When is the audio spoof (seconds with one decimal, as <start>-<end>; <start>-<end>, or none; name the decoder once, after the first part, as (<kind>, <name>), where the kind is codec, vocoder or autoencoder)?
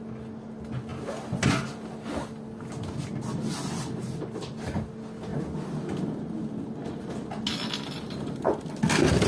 none